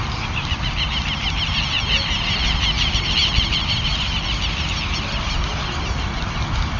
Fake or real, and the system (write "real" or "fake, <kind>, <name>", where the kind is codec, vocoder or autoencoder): real